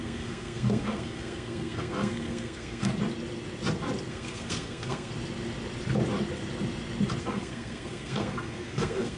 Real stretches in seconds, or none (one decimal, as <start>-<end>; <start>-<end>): 2.9-4.1; 5.1-7.2